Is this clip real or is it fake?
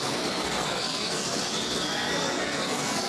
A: fake